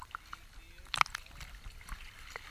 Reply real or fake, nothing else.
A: real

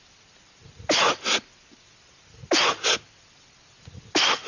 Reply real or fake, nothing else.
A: real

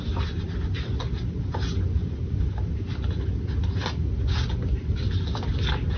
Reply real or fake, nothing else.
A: real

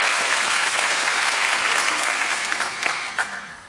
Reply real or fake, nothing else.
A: fake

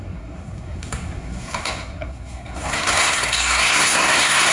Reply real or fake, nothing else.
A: fake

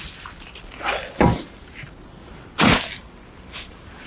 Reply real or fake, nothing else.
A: real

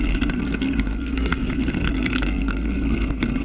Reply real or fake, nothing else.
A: fake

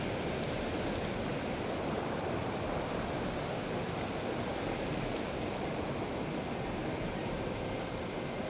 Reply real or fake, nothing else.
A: real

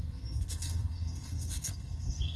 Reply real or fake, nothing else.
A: fake